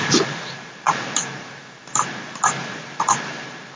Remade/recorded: recorded